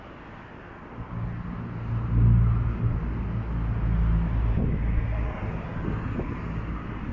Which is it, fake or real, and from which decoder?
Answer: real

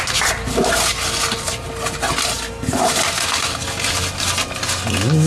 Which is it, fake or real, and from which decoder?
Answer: real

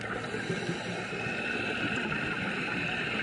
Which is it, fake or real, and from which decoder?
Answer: real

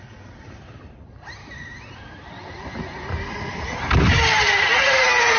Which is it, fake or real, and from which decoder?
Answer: real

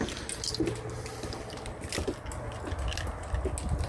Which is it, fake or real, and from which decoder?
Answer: real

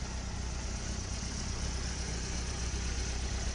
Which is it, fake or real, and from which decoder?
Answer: fake, vocoder, Vocos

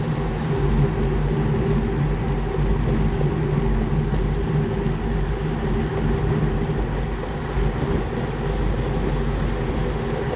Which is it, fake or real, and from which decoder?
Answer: real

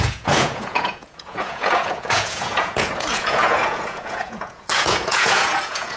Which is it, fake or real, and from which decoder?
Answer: fake, vocoder, Vocos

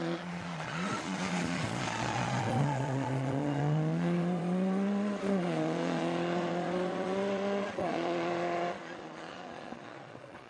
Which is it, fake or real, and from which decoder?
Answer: fake, vocoder, Vocos